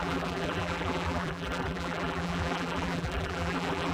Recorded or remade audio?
remade